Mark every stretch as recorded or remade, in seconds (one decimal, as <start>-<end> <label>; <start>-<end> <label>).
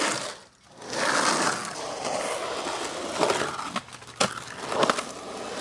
0.0-5.6 recorded